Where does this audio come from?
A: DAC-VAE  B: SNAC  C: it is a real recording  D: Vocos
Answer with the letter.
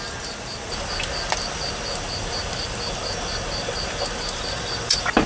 C